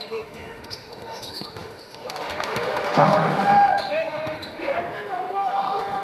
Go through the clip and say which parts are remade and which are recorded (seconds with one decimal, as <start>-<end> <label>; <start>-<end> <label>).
0.0-6.0 remade